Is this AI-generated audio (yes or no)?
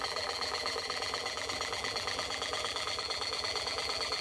yes